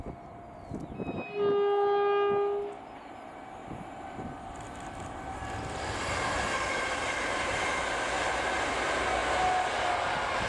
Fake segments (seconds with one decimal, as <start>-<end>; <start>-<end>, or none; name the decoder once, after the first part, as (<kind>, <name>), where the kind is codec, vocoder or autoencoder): 3.6-4.3 (vocoder, BigVGAN v2)